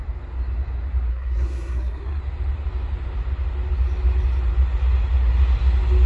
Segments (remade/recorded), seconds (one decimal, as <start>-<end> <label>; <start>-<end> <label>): 0.0-1.1 recorded; 1.1-2.2 remade; 2.2-6.1 recorded